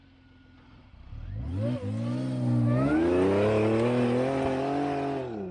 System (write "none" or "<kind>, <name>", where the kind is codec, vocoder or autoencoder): none